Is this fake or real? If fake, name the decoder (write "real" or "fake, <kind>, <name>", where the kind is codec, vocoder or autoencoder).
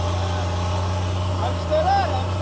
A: real